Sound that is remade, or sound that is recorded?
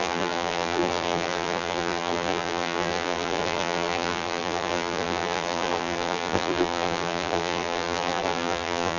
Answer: remade